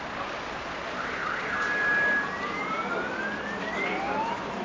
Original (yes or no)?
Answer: yes